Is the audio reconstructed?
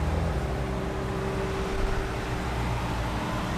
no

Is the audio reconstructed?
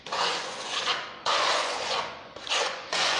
yes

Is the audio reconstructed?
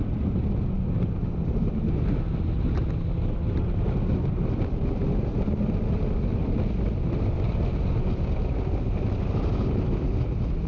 no